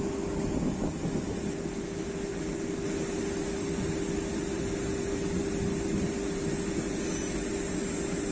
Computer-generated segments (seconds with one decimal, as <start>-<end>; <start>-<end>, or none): none